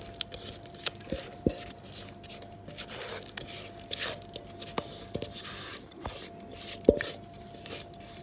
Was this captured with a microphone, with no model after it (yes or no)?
yes